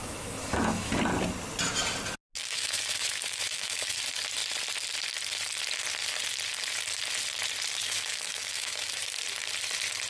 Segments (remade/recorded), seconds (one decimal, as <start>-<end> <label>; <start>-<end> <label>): 0.0-1.0 remade; 1.0-2.4 recorded; 2.4-4.0 remade; 4.0-7.8 recorded; 7.8-9.0 remade; 9.0-10.1 recorded